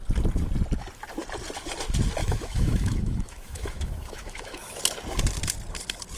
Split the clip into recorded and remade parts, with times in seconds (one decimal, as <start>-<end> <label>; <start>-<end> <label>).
0.0-2.2 recorded; 2.2-4.8 remade; 4.8-6.2 recorded